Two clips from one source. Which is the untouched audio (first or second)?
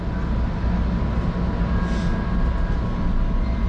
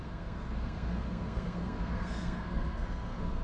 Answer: first